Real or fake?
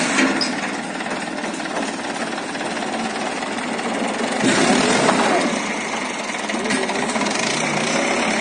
real